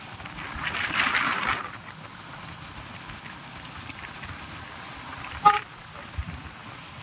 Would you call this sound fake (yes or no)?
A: yes